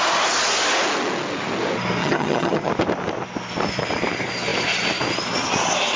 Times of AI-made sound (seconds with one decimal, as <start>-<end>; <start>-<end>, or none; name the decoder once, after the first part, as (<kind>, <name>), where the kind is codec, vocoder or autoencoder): 2.0-2.7 (vocoder, HiFi-GAN)